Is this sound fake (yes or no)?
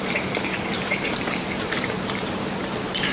yes